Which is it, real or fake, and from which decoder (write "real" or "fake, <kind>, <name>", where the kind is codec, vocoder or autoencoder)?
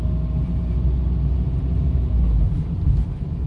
real